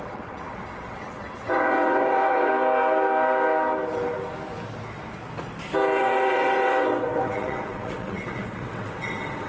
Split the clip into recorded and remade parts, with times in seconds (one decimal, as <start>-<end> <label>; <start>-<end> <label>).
0.0-2.5 remade; 2.5-6.0 recorded; 6.0-9.5 remade